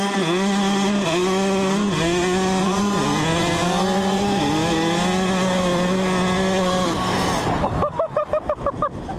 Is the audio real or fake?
real